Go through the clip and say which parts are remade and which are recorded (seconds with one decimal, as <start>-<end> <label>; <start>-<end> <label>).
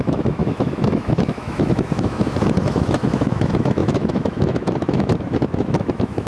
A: 0.0-6.3 remade